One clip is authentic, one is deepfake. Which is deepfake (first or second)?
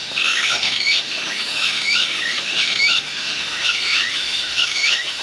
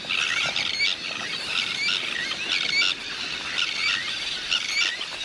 first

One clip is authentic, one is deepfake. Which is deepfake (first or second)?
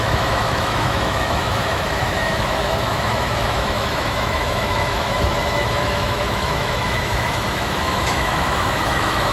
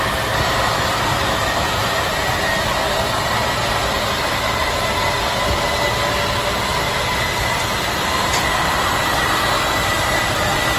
first